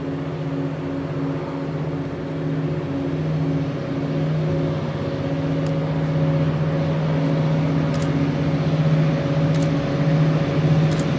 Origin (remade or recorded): recorded